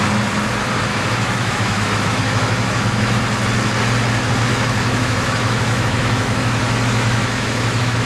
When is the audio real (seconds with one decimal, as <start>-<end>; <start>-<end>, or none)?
0.0-0.9; 3.2-4.5